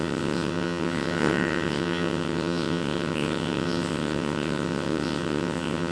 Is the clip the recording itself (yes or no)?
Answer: no